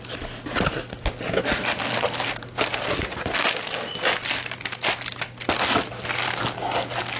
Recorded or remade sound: recorded